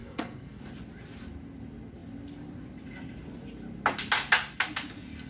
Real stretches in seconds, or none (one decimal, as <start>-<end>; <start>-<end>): 0.6-5.3

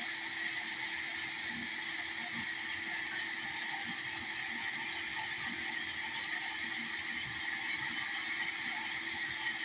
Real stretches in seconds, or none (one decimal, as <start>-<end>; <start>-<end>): 0.0-9.6

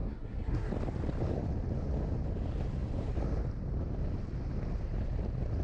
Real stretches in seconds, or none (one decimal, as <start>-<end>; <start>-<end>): 0.7-5.6

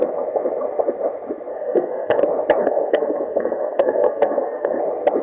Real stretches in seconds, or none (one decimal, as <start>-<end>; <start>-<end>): 0.0-1.5; 2.2-2.6; 4.8-5.2

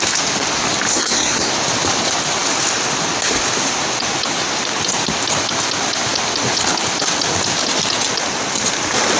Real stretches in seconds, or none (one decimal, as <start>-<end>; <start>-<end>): 0.0-0.9; 1.5-9.2

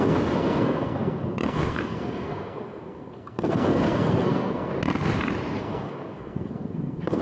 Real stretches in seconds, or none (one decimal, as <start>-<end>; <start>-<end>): 4.7-5.6

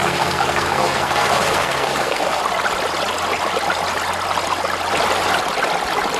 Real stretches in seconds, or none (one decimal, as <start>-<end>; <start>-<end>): 2.4-6.2

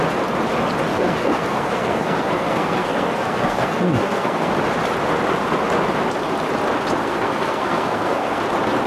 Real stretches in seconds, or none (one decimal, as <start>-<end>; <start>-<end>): 0.0-0.9; 4.5-7.0; 8.4-8.9